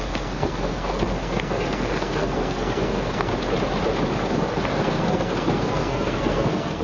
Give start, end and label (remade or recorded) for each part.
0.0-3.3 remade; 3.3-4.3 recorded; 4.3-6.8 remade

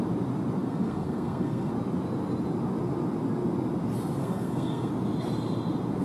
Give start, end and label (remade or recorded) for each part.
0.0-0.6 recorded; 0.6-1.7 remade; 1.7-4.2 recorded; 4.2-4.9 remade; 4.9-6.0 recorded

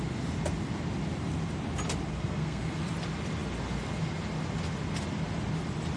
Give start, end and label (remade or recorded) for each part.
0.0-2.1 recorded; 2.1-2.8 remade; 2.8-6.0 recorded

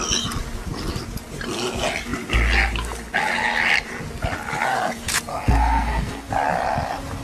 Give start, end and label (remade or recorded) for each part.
0.0-5.3 recorded; 5.3-6.3 remade; 6.3-7.2 recorded

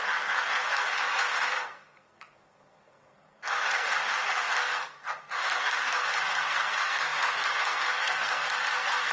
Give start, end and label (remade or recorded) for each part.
0.0-9.1 remade